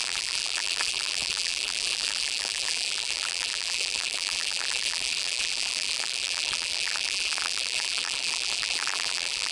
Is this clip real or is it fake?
fake